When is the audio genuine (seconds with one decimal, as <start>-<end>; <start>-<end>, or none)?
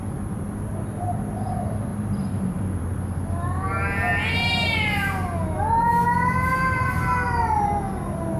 0.0-1.9; 2.8-8.4